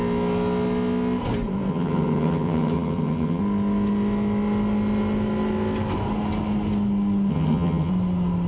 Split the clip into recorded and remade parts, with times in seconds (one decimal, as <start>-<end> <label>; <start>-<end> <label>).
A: 0.0-1.7 recorded; 1.7-3.4 remade; 3.4-7.3 recorded; 7.3-7.9 remade; 7.9-8.5 recorded